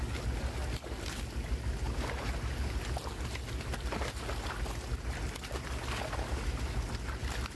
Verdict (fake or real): real